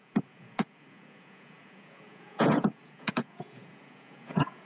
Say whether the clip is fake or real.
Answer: fake